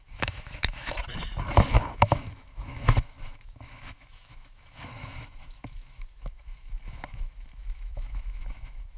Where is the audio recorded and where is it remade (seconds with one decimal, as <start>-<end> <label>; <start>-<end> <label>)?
0.0-1.0 remade; 1.0-1.7 recorded; 1.7-9.0 remade